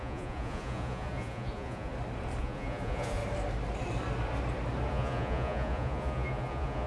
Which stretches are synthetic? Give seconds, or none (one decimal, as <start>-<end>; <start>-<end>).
0.0-1.9; 2.4-3.2; 4.9-6.9